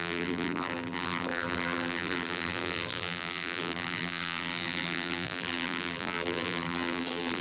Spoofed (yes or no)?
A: yes